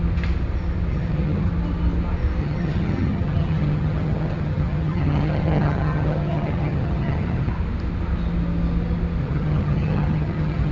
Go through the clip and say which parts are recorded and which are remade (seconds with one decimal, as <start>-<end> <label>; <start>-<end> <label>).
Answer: 0.0-0.9 recorded; 0.9-1.5 remade; 1.5-2.4 recorded; 2.4-7.5 remade; 7.5-9.2 recorded; 9.2-10.7 remade